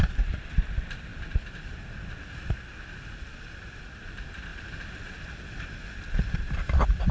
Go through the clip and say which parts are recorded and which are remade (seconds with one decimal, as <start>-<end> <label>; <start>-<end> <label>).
0.0-4.5 remade; 4.5-6.1 recorded; 6.1-7.1 remade